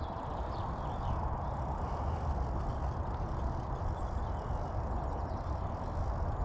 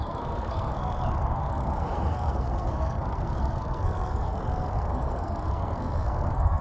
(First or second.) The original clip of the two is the first